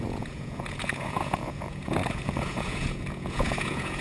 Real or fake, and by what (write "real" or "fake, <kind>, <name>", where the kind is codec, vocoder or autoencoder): fake, vocoder, Vocos